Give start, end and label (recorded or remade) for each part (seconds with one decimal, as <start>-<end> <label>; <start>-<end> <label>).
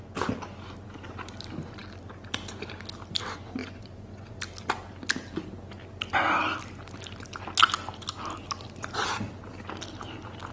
0.0-3.6 recorded; 3.6-4.3 remade; 4.3-10.5 recorded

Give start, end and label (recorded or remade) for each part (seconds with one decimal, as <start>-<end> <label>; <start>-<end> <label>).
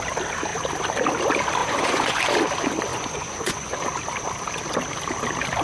0.0-1.6 recorded; 1.6-2.2 remade; 2.2-2.9 recorded; 2.9-3.8 remade; 3.8-5.6 recorded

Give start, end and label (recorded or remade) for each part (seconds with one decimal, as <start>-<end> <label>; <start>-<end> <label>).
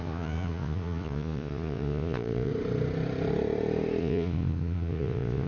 0.0-2.5 remade; 2.5-4.0 recorded; 4.0-5.5 remade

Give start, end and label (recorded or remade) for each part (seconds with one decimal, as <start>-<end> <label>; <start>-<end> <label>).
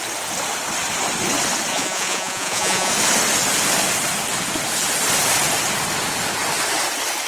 0.0-1.7 recorded; 1.7-2.9 remade; 2.9-7.3 recorded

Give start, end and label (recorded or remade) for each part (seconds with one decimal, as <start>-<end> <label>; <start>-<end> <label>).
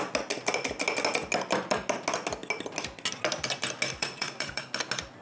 0.0-4.0 recorded; 4.0-4.6 remade; 4.6-5.2 recorded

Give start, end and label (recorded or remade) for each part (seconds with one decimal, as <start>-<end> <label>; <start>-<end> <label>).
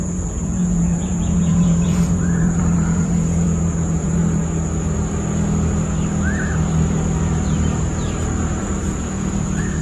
0.0-4.2 remade; 4.2-9.0 recorded; 9.0-9.8 remade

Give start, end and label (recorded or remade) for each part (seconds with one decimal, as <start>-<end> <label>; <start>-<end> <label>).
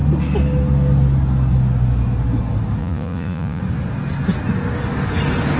0.0-2.8 recorded; 2.8-3.6 remade; 3.6-5.6 recorded